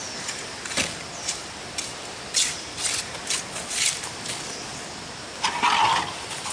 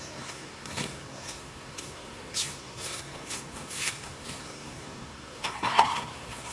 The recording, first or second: first